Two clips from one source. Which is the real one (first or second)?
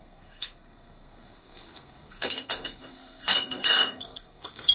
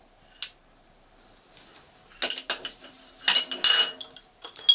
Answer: second